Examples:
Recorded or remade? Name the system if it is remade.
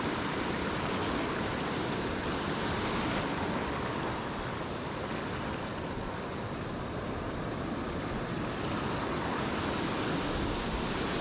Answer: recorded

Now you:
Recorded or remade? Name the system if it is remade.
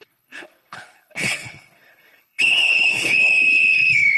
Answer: remade, codec, HILCodec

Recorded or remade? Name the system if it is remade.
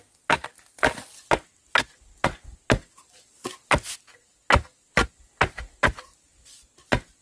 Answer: recorded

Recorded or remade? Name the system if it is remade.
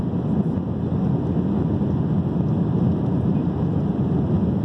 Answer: recorded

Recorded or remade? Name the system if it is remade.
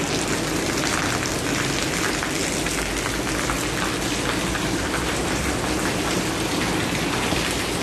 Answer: recorded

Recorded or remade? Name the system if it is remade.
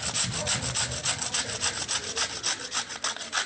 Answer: recorded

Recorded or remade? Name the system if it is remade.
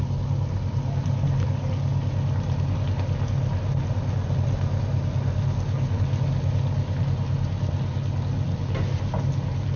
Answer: recorded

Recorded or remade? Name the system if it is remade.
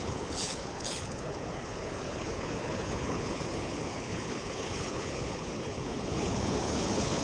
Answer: remade, codec, HILCodec